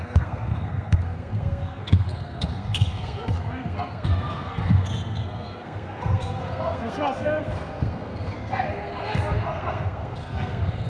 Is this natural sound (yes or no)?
no